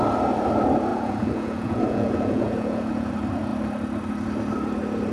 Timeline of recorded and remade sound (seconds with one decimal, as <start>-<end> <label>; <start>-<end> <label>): 0.0-0.9 recorded; 0.9-3.1 remade; 3.1-5.1 recorded